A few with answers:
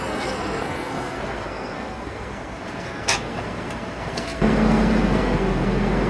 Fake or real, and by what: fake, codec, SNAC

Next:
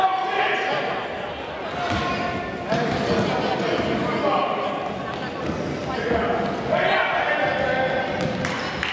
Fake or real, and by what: real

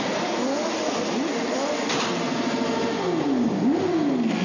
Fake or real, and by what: real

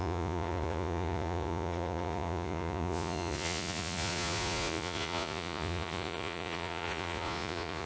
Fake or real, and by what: fake, vocoder, Vocos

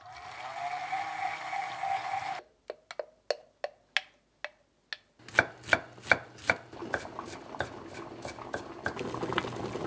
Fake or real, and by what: real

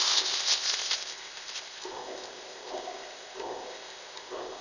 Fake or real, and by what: fake, codec, ZipCodec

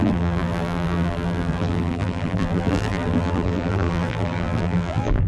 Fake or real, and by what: fake, vocoder, BigVGAN v2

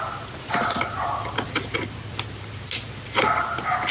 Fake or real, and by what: real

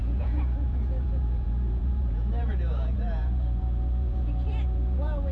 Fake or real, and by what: fake, vocoder, Vocos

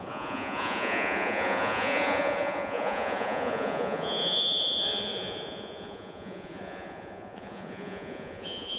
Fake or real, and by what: fake, vocoder, Vocos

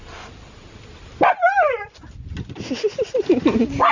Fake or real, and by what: real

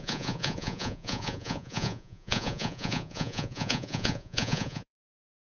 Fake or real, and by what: fake, vocoder, Vocos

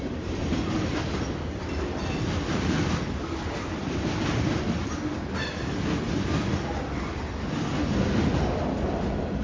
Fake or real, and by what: real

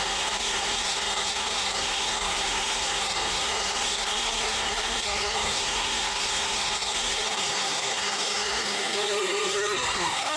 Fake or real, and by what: fake, codec, SNAC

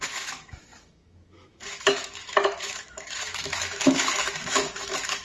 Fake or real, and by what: fake, autoencoder, DAC-VAE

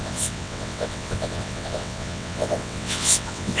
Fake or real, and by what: fake, vocoder, WaveNeXt